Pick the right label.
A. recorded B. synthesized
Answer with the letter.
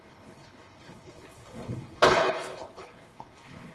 B